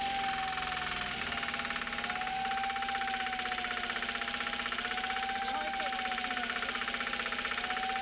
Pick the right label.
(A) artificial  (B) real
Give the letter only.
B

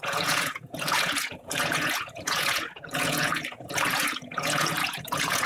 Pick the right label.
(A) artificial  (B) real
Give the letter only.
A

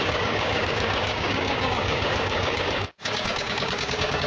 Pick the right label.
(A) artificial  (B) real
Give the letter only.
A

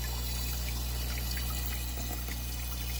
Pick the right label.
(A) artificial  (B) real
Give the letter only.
B